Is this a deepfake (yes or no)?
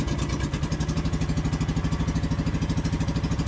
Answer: no